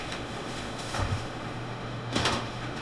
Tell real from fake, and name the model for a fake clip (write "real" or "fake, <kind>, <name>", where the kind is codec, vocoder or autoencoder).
fake, autoencoder, DAC-VAE